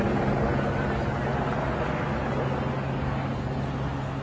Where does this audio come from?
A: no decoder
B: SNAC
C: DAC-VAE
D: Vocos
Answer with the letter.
A